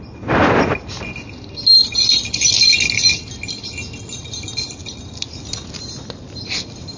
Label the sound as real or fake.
real